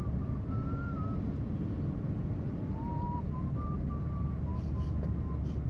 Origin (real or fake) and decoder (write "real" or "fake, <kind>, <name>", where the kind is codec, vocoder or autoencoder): real